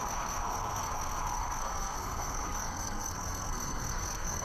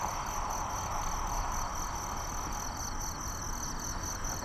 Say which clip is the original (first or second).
second